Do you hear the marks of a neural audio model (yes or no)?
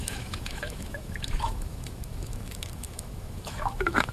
yes